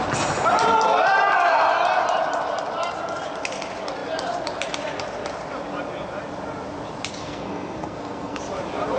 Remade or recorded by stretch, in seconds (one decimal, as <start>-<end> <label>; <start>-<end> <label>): 0.0-7.2 recorded; 7.2-8.4 remade; 8.4-9.0 recorded